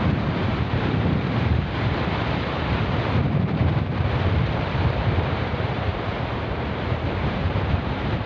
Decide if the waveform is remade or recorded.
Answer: remade